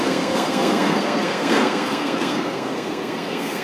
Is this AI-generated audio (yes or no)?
yes